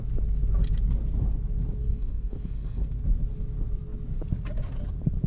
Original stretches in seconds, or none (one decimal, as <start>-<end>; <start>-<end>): 0.0-1.8; 2.9-5.3